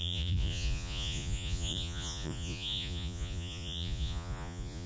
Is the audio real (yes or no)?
no